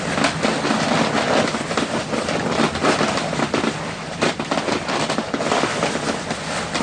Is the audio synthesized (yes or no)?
no